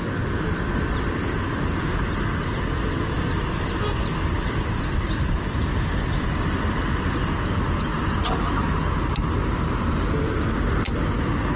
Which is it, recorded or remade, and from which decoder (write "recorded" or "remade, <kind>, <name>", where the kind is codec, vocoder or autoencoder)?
recorded